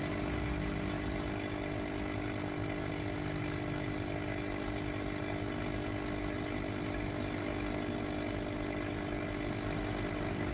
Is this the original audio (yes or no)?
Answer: yes